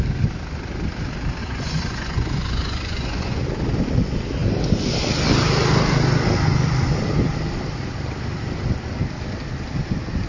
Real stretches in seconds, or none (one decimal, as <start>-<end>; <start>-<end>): 0.0-1.4; 3.4-10.3